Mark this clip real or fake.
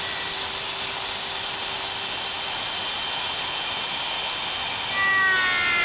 real